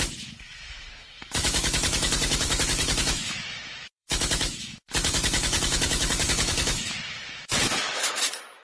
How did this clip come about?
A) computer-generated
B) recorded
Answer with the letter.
A